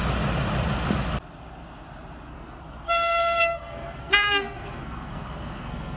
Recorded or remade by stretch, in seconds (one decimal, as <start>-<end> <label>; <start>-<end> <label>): 0.0-2.3 recorded; 2.3-6.0 remade

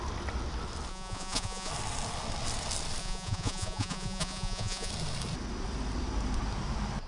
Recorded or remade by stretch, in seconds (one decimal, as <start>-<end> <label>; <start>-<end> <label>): 0.0-0.9 recorded; 0.9-1.7 remade; 1.7-3.0 recorded; 3.0-4.9 remade; 4.9-7.1 recorded

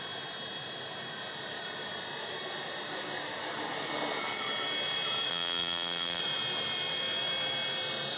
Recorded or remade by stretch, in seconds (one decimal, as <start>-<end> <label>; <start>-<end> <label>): 0.0-5.3 recorded; 5.3-6.2 remade; 6.2-8.2 recorded

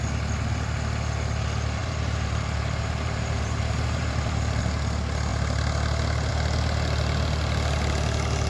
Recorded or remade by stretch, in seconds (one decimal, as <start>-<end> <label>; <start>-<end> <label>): 0.0-1.8 recorded; 1.8-4.6 remade; 4.6-8.5 recorded

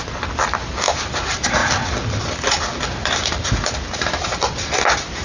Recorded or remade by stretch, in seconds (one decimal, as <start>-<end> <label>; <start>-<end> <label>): 0.0-5.2 recorded

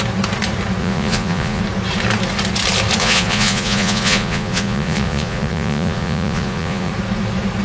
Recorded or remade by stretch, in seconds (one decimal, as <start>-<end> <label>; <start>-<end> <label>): 0.0-0.8 recorded; 0.8-1.6 remade; 1.6-3.0 recorded; 3.0-6.9 remade; 6.9-7.6 recorded